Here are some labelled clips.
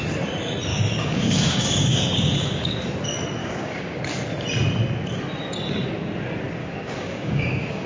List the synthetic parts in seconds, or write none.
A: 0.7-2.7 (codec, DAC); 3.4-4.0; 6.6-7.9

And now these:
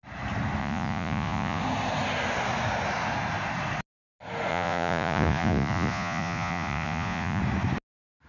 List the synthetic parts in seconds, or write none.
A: 0.6-1.6 (vocoder, Vocos); 4.5-7.4

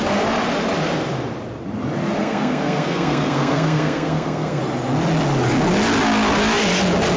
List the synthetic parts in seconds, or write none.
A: 2.2-4.6 (codec, SNAC)

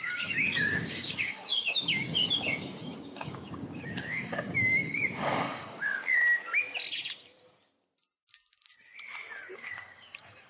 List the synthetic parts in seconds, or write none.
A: 0.0-6.2 (codec, DAC); 9.5-10.5

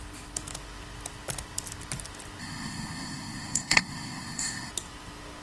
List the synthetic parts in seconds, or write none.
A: 2.4-4.7 (codec, SNAC)